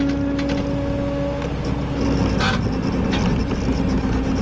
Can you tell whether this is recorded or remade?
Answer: recorded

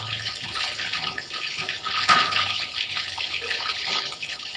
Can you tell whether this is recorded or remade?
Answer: remade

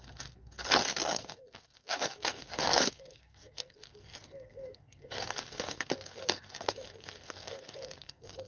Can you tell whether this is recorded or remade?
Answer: remade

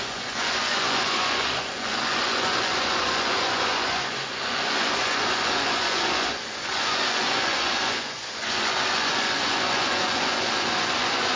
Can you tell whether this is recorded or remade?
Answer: remade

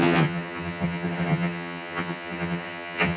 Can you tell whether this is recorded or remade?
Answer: remade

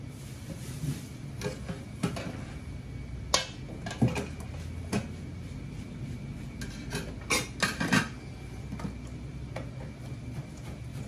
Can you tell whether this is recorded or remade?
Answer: recorded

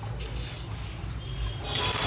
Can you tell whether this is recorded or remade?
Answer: recorded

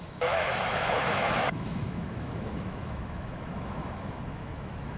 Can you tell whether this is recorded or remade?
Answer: remade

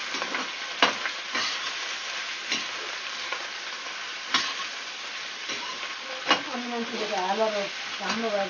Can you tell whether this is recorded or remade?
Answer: recorded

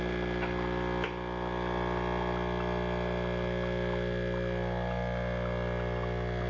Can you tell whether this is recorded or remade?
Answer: recorded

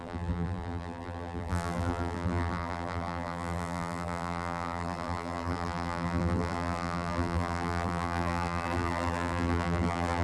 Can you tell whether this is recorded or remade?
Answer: remade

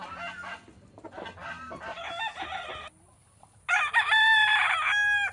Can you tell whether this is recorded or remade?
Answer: recorded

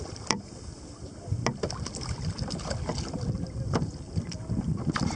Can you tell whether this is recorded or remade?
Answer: recorded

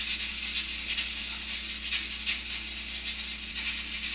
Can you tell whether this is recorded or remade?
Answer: recorded